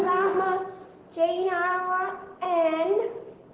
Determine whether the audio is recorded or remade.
recorded